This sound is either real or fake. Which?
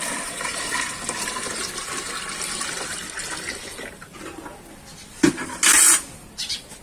real